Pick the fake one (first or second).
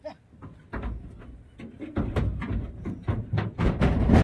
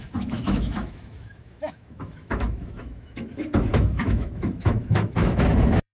second